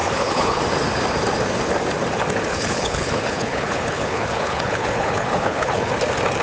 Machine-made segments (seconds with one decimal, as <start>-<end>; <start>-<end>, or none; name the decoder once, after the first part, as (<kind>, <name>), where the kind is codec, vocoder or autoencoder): 0.0-0.6 (codec, HILCodec); 2.5-5.9